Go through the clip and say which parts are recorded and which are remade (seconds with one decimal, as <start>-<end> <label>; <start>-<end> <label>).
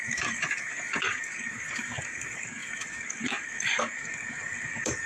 0.0-5.1 remade